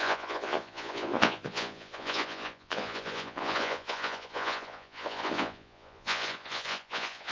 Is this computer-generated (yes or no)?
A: yes